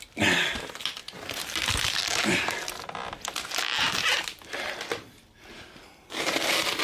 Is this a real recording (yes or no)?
yes